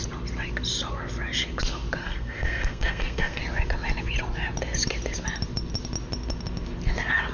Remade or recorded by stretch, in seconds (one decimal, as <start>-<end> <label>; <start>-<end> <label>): 0.0-2.0 recorded; 2.0-3.4 remade; 3.4-7.3 recorded